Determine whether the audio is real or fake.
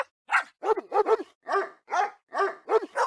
real